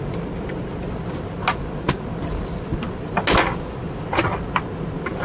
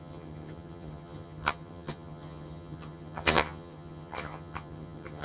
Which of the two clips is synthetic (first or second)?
second